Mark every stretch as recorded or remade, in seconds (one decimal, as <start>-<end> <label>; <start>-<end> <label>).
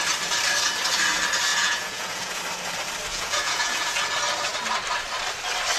0.0-1.5 recorded; 1.5-2.4 remade; 2.4-3.1 recorded; 3.1-4.0 remade; 4.0-5.8 recorded